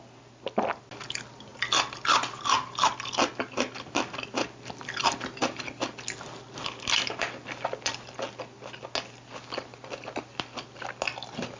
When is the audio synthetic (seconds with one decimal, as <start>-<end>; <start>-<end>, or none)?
none